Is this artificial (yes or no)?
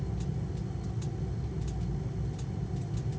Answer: no